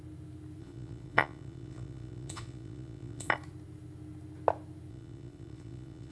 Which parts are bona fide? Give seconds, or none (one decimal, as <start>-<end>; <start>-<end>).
0.0-0.6; 3.3-4.9